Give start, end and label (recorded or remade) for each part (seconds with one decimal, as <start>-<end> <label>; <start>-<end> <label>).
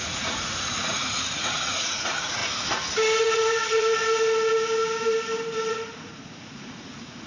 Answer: 0.0-2.4 remade; 2.4-3.2 recorded; 3.2-4.0 remade; 4.0-5.7 recorded; 5.7-7.3 remade